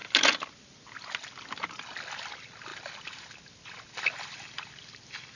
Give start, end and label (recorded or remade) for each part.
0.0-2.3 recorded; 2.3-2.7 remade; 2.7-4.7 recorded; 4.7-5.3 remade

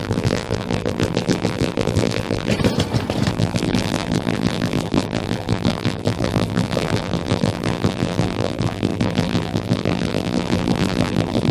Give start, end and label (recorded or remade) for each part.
0.0-2.5 remade; 2.5-3.3 recorded; 3.3-11.5 remade